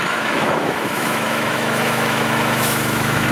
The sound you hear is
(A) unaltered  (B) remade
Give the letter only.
B